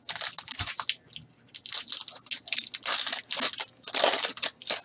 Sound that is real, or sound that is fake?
real